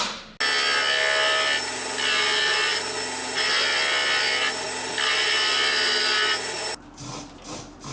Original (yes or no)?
yes